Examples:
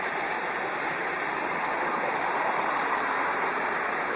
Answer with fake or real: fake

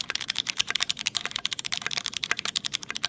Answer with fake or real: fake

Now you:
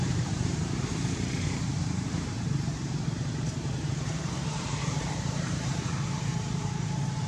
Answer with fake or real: fake